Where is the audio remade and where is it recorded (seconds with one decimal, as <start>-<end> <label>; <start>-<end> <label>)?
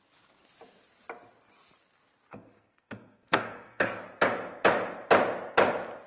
0.0-2.3 recorded; 2.3-4.0 remade; 4.0-6.1 recorded